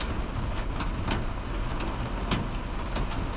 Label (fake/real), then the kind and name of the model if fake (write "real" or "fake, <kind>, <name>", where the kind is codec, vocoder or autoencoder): real